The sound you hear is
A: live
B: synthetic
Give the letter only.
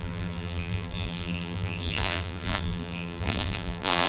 B